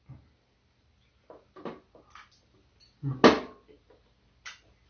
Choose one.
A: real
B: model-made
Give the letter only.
A